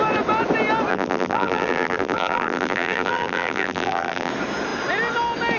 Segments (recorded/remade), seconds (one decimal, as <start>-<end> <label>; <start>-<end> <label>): 0.0-0.9 recorded; 0.9-4.3 remade; 4.3-5.6 recorded